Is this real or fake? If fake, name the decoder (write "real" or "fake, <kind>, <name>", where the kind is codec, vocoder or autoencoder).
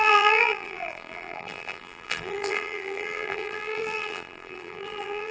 fake, vocoder, BigVGAN v2